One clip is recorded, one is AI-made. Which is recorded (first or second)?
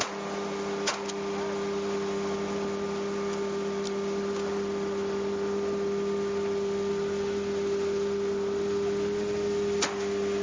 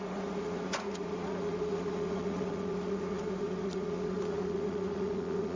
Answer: first